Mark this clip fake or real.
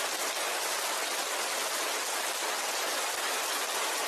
real